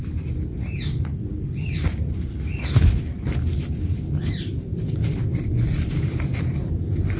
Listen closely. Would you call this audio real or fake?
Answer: fake